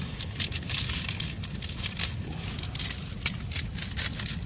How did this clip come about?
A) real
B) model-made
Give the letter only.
A